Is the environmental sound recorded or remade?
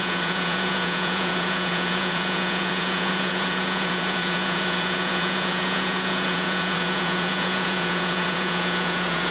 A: remade